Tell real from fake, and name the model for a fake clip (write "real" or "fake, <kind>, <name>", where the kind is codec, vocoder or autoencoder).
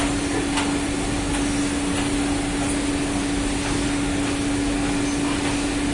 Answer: real